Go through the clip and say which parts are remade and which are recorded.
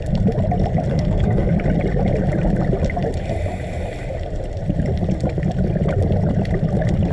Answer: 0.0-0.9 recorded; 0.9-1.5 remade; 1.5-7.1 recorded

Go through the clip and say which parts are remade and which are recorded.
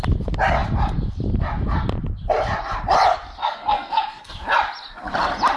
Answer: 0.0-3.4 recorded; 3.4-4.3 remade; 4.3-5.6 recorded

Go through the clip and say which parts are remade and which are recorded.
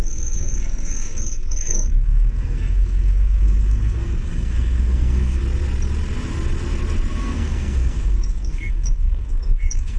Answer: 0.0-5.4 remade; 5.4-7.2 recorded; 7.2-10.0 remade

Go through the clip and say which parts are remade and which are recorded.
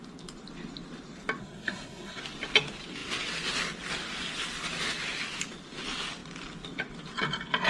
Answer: 0.0-1.4 recorded; 1.4-2.2 remade; 2.2-7.7 recorded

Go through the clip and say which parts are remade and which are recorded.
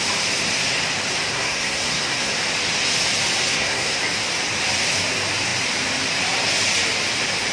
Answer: 0.0-1.3 recorded; 1.3-2.3 remade; 2.3-3.5 recorded; 3.5-4.0 remade; 4.0-7.5 recorded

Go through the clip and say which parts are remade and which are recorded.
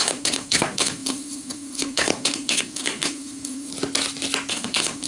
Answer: 0.0-3.7 remade; 3.7-4.5 recorded; 4.5-5.1 remade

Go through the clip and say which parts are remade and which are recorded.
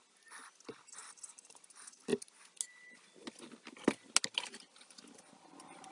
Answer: 0.0-5.9 recorded